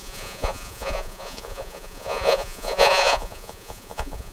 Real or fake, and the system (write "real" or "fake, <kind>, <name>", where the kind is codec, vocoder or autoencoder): fake, vocoder, Vocos